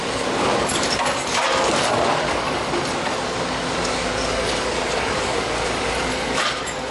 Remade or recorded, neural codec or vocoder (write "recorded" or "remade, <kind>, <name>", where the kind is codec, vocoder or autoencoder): remade, codec, DAC